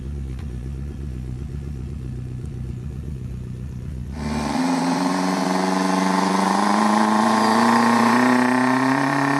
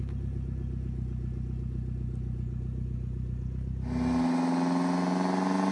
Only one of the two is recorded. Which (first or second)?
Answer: second